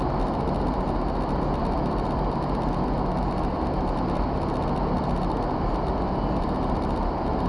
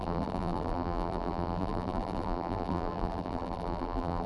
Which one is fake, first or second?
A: second